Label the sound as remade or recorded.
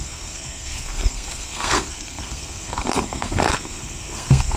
remade